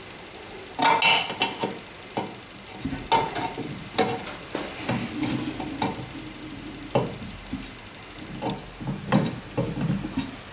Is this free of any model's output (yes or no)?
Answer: yes